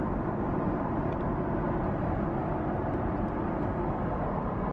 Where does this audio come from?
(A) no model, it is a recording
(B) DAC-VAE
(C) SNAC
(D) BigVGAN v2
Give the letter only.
A